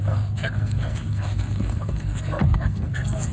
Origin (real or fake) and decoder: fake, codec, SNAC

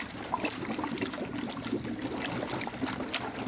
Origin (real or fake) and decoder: real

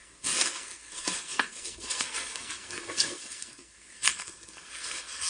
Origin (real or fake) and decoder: fake, codec, SNAC